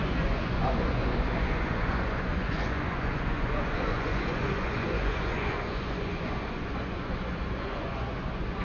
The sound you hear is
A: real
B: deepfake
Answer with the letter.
B